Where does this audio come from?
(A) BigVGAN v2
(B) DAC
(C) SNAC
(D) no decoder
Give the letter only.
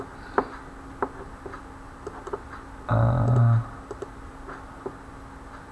D